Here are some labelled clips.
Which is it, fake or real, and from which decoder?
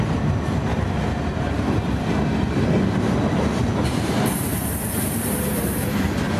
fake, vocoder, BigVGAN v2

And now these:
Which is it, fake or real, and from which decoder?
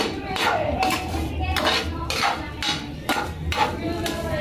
real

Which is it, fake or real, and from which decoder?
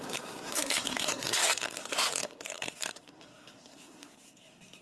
fake, codec, SNAC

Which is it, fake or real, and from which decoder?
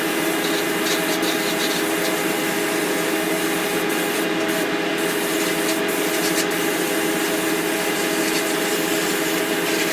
real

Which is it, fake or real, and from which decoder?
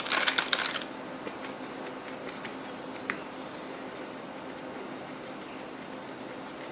real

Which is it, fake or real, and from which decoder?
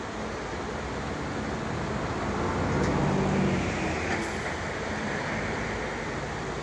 real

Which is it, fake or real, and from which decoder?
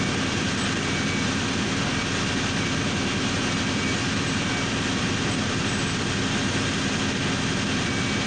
real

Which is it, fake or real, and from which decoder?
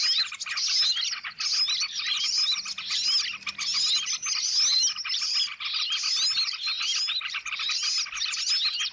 real